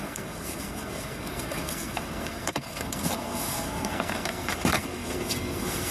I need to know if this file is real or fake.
fake